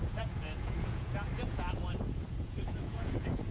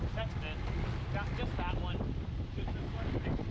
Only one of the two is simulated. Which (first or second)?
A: first